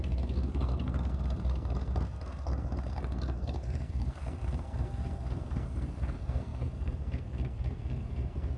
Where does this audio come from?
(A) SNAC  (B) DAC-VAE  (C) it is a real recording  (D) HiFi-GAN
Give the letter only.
A